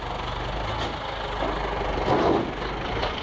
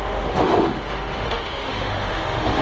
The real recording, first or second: first